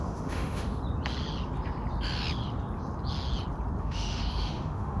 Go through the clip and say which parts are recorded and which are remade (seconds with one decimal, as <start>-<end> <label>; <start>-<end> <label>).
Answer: 0.0-0.8 remade; 0.8-3.8 recorded; 3.8-5.0 remade